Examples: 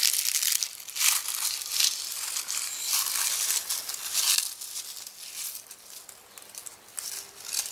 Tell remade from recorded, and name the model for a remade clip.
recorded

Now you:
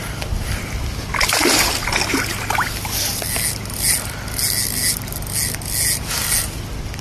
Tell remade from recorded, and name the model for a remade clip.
recorded